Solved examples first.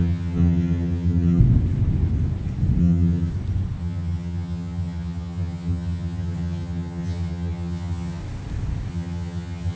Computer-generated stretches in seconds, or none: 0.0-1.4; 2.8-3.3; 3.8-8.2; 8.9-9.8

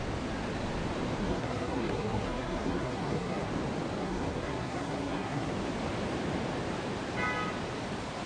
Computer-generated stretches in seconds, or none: 1.2-3.5; 4.0-5.5

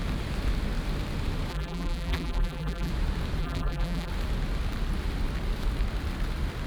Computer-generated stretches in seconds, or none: 1.5-2.9; 3.4-4.1

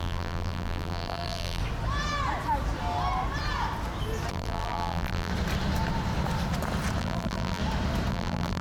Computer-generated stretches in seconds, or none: 0.0-1.6; 4.3-5.3; 7.0-7.6; 8.1-8.6

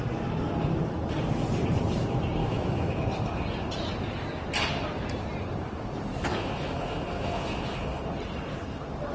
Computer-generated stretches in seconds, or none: 2.4-2.9; 6.3-8.0

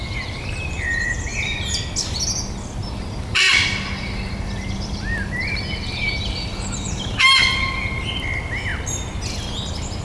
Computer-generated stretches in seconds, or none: 2.8-7.2

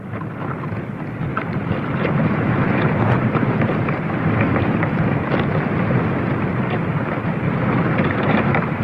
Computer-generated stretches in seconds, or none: 1.3-5.3

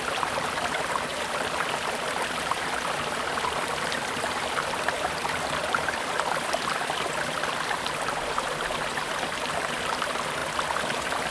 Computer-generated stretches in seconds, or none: 1.1-6.4; 10.4-11.3